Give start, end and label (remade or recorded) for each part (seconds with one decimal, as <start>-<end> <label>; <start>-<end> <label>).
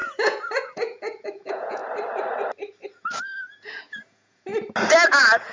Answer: 0.0-1.8 remade; 1.8-2.9 recorded; 2.9-4.5 remade; 4.5-5.1 recorded; 5.1-5.5 remade